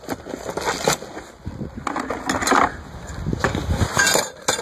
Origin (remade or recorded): recorded